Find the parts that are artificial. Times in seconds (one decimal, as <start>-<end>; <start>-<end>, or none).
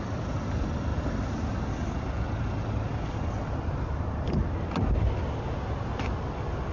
none